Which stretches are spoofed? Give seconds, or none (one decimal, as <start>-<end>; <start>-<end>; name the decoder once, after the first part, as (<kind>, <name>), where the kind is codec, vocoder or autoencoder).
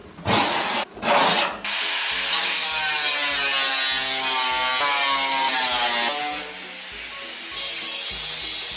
0.0-1.4 (vocoder, Vocos)